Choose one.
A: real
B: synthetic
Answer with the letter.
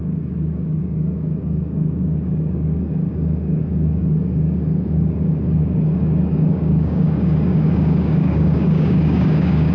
B